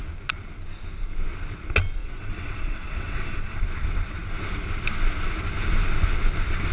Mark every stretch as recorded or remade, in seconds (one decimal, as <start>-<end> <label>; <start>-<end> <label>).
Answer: 0.0-2.0 recorded; 2.0-3.6 remade; 3.6-6.7 recorded